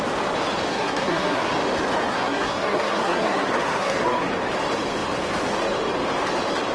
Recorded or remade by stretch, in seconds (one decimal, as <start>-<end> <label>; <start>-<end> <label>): 0.0-0.7 recorded; 0.7-1.5 remade; 1.5-2.1 recorded; 2.1-4.3 remade; 4.3-6.7 recorded